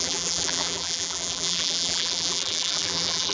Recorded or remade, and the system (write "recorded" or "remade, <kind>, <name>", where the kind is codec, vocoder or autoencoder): remade, vocoder, BigVGAN v2